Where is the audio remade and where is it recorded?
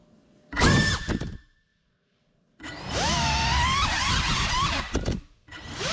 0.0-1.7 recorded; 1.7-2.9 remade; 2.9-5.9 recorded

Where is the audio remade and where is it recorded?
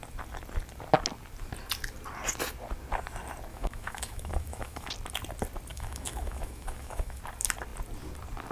0.0-3.5 recorded; 3.5-4.9 remade; 4.9-5.7 recorded; 5.7-7.2 remade; 7.2-8.5 recorded